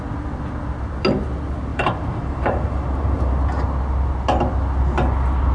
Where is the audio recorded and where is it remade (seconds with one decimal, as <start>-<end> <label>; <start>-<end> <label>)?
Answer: 0.0-1.7 recorded; 1.7-3.3 remade; 3.3-5.5 recorded

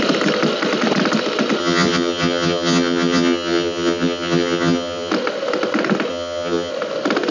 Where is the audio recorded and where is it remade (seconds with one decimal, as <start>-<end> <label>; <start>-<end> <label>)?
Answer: 0.0-1.6 recorded; 1.6-5.1 remade; 5.1-6.1 recorded; 6.1-6.7 remade; 6.7-7.3 recorded

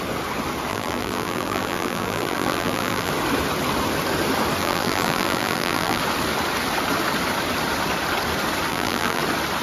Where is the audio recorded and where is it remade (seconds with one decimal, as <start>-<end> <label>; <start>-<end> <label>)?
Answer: 0.0-0.7 recorded; 0.7-3.1 remade; 3.1-4.6 recorded; 4.6-6.0 remade; 6.0-8.7 recorded; 8.7-9.2 remade; 9.2-9.6 recorded